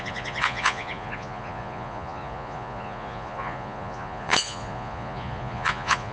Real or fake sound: fake